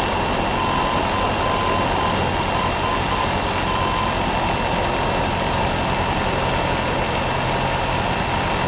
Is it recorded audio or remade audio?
recorded